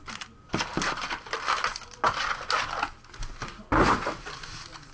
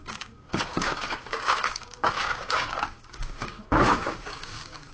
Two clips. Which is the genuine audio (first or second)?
first